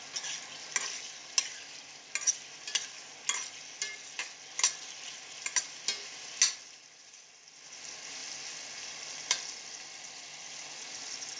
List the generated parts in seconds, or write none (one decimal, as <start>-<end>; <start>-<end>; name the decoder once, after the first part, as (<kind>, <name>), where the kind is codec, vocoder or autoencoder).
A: none